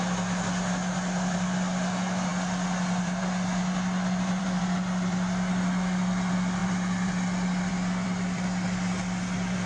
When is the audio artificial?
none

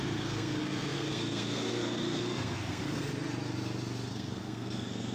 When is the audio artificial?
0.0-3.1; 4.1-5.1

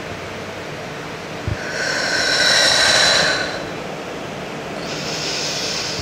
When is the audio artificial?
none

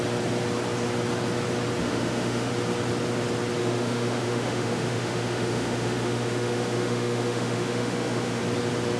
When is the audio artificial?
1.8-2.5; 3.6-8.4

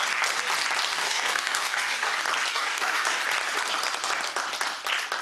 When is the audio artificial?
0.9-2.1; 2.5-3.2

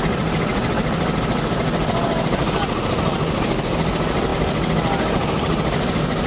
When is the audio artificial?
none

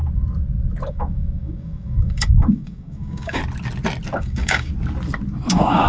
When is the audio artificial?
0.9-3.4; 4.2-4.7; 5.5-5.9

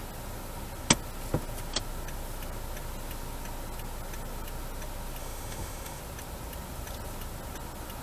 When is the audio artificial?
5.2-6.0